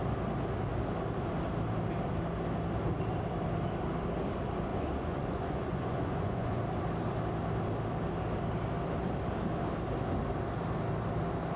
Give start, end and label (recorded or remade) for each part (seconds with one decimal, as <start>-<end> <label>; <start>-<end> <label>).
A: 0.0-4.7 recorded; 4.7-6.6 remade; 6.6-11.6 recorded